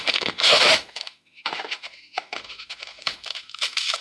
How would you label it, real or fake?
fake